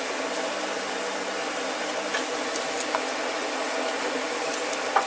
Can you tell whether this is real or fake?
real